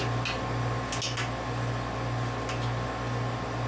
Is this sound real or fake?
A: real